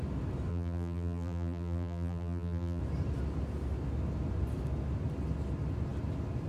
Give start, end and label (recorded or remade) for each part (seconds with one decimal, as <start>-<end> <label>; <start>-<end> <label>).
0.0-0.5 recorded; 0.5-2.8 remade; 2.8-6.5 recorded